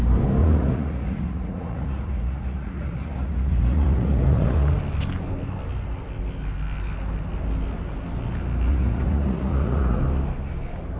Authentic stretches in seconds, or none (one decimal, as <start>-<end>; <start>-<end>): 0.0-0.4; 4.8-8.7; 10.0-11.0